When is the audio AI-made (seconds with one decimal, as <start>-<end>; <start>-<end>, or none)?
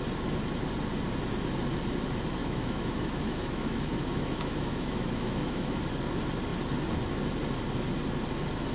2.4-5.8